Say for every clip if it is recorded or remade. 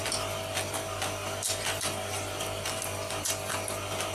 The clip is recorded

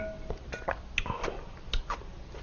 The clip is recorded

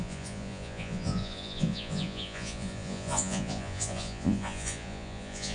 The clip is remade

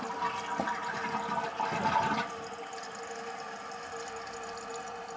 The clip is recorded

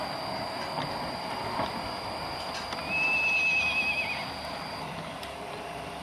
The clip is recorded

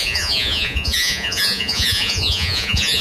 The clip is remade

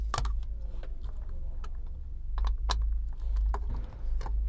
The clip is recorded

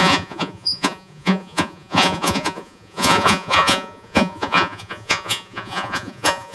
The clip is remade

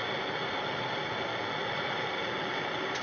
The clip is recorded